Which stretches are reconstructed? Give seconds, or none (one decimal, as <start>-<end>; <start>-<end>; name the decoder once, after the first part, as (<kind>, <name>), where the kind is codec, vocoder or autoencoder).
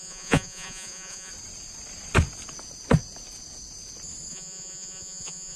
0.0-1.3 (vocoder, Vocos); 4.3-5.6